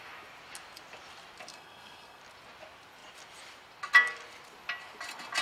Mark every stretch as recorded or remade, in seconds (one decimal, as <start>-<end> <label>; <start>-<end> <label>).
0.0-1.5 recorded; 1.5-2.2 remade; 2.2-5.4 recorded